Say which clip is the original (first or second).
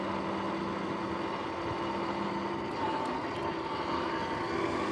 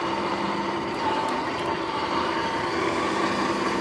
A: first